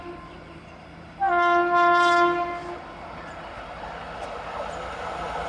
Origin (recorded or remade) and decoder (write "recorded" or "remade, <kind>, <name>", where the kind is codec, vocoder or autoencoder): recorded